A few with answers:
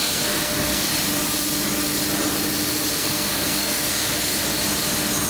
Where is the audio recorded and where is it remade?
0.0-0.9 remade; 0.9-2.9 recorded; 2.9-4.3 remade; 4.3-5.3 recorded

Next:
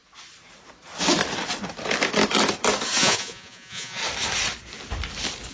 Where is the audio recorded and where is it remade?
0.0-3.0 recorded; 3.0-4.0 remade; 4.0-5.5 recorded

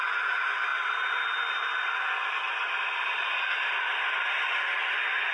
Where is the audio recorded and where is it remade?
0.0-5.3 recorded

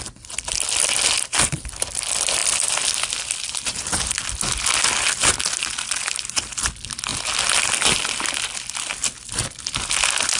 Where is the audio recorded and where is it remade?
0.0-10.4 recorded

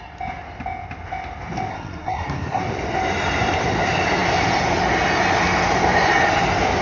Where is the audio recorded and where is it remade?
0.0-1.7 recorded; 1.7-2.6 remade; 2.6-6.8 recorded

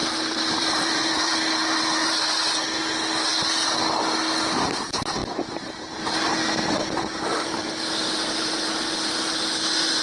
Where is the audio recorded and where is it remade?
0.0-2.8 remade; 2.8-7.3 recorded; 7.3-8.6 remade; 8.6-10.0 recorded

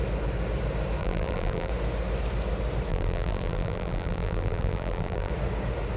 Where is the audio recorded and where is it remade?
0.0-1.0 recorded; 1.0-1.7 remade; 1.7-2.9 recorded; 2.9-5.3 remade; 5.3-6.0 recorded

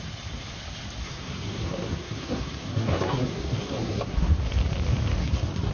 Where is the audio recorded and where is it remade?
0.0-1.0 recorded; 1.0-4.4 remade; 4.4-5.2 recorded; 5.2-5.7 remade